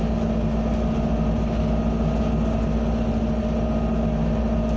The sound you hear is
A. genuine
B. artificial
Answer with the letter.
A